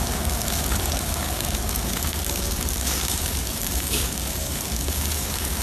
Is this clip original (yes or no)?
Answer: no